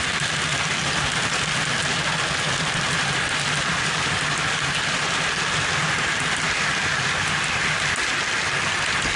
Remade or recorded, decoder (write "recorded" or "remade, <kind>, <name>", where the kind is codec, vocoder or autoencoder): recorded